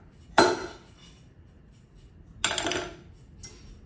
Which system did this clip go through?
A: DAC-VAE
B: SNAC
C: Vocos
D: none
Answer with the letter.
D